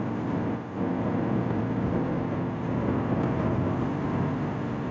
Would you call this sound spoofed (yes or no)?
no